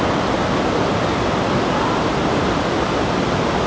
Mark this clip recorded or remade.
recorded